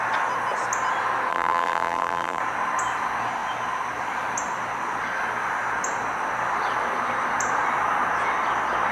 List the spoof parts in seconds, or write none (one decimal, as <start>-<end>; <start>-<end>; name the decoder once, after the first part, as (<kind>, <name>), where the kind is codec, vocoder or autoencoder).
1.3-2.4 (vocoder, BigVGAN v2)